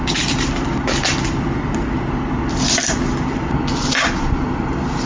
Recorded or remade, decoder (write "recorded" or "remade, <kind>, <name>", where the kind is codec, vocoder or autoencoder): remade, vocoder, BigVGAN v2